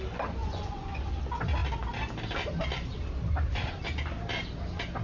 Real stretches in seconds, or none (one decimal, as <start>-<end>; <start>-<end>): 0.0-0.4; 1.2-5.0